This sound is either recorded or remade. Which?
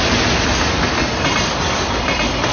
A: recorded